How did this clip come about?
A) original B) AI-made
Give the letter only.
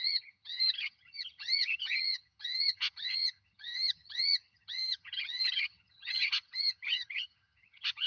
B